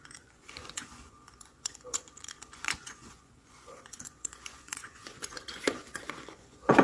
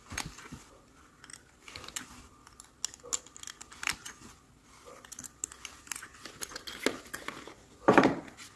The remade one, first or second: first